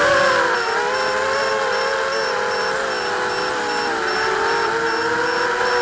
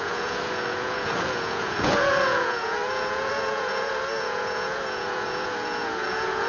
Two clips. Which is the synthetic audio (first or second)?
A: second